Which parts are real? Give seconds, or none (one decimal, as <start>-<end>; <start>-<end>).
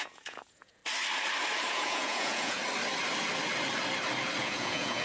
0.8-1.7; 2.6-4.4